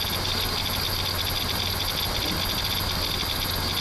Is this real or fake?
real